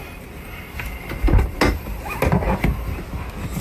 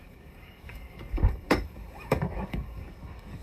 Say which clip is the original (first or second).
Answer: first